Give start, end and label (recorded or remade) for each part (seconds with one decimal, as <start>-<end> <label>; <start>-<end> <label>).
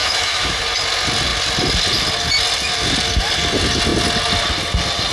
0.0-0.6 remade; 0.6-5.1 recorded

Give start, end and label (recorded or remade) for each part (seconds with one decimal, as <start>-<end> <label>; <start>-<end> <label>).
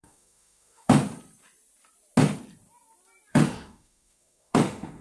0.0-1.0 remade; 1.0-3.3 recorded; 3.3-5.0 remade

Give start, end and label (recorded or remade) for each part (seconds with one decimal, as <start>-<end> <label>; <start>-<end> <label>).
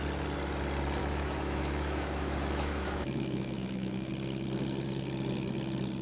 0.0-1.0 recorded; 1.0-4.1 remade; 4.1-6.0 recorded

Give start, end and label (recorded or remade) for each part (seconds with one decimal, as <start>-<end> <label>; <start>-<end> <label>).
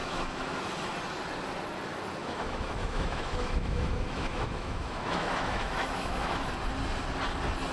0.0-0.6 remade; 0.6-2.2 recorded; 2.2-6.5 remade; 6.5-7.7 recorded